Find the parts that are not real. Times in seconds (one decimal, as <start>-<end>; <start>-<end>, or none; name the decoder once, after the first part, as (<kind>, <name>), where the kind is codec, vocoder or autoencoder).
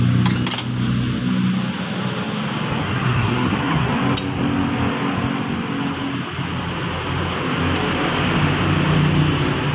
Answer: 2.8-3.9 (codec, SNAC)